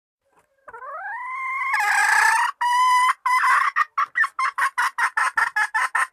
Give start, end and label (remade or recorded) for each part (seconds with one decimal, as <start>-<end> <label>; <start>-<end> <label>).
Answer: 0.0-6.1 recorded